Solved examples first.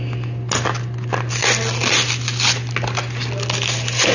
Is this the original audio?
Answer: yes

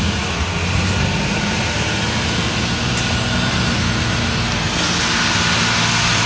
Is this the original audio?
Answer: yes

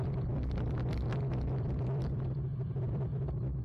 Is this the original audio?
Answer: yes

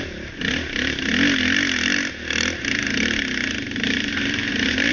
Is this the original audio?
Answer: yes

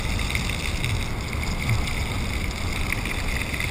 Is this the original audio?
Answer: yes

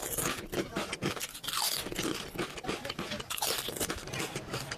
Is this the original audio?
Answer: yes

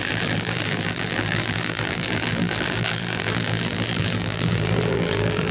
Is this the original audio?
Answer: no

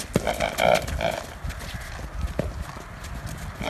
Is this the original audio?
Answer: yes